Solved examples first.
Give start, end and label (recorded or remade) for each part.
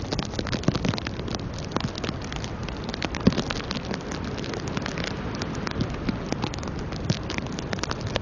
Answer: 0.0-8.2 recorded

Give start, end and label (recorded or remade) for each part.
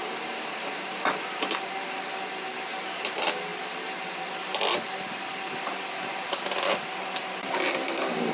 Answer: 0.0-8.3 recorded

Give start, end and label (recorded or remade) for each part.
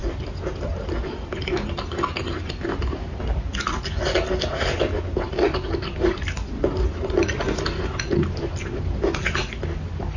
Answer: 0.0-10.2 recorded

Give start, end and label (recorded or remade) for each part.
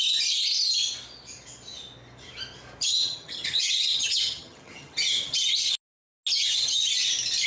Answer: 0.0-2.8 recorded; 2.8-5.5 remade; 5.5-6.4 recorded; 6.4-6.9 remade; 6.9-7.5 recorded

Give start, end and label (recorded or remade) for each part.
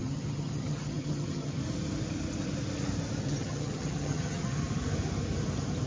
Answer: 0.0-1.6 remade; 1.6-3.2 recorded; 3.2-4.6 remade; 4.6-5.9 recorded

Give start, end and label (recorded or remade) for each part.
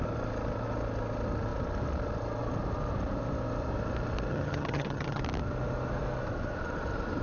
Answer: 0.0-4.3 recorded; 4.3-5.2 remade; 5.2-7.2 recorded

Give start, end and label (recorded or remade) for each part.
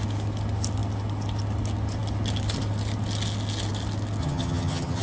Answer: 0.0-4.2 recorded; 4.2-5.0 remade